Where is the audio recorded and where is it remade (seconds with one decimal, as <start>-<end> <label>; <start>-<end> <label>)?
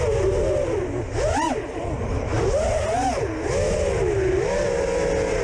0.0-5.4 recorded